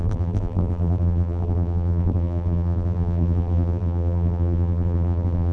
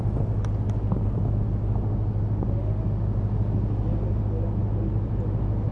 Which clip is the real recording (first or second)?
second